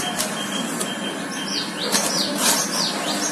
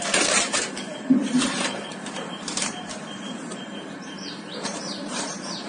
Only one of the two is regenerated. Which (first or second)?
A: second